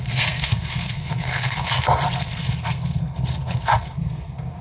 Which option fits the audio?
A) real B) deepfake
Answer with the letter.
B